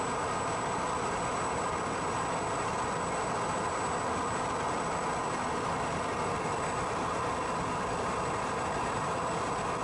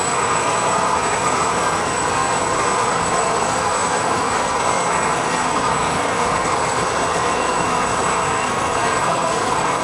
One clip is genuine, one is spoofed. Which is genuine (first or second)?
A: first